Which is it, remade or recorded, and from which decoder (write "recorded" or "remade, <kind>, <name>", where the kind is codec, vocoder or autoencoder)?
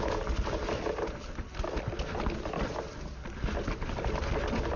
recorded